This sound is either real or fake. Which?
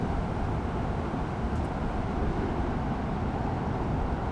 real